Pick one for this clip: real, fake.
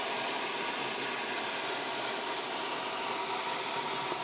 real